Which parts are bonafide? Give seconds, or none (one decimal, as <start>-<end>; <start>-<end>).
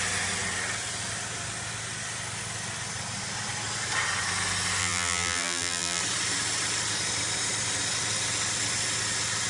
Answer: 0.0-4.8; 6.0-9.5